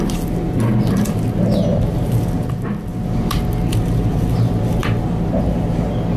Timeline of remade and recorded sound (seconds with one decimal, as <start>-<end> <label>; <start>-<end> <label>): 0.0-6.2 recorded